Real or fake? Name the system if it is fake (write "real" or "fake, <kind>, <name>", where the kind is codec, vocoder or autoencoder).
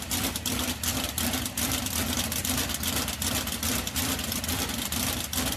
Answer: real